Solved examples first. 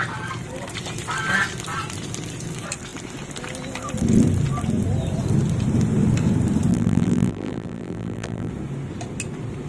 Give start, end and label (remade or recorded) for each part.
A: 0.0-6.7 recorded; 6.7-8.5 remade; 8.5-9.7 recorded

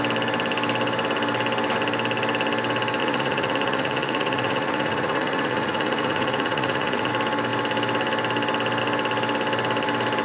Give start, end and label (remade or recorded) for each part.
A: 0.0-3.0 recorded; 3.0-7.1 remade; 7.1-10.2 recorded

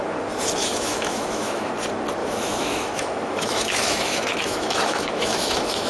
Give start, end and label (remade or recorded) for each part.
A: 0.0-0.6 recorded; 0.6-1.7 remade; 1.7-2.2 recorded; 2.2-5.9 remade

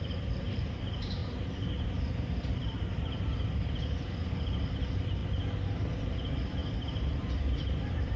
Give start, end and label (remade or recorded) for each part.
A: 0.0-5.2 remade; 5.2-6.0 recorded; 6.0-8.2 remade

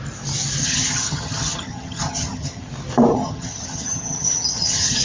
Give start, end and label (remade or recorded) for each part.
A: 0.0-0.6 recorded; 0.6-2.7 remade; 2.7-3.1 recorded; 3.1-5.0 remade